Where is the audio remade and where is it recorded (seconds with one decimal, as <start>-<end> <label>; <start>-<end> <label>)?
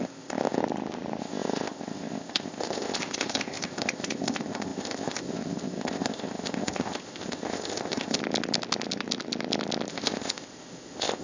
0.0-0.6 remade; 0.6-1.2 recorded; 1.2-8.2 remade; 8.2-9.9 recorded; 9.9-11.2 remade